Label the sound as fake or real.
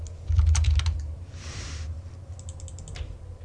real